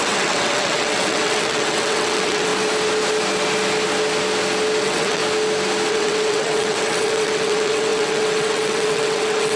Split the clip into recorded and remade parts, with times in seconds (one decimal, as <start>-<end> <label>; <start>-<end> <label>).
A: 0.0-2.5 remade; 2.5-4.8 recorded; 4.8-5.2 remade; 5.2-5.9 recorded; 5.9-9.6 remade